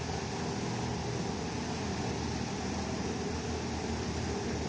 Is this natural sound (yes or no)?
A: yes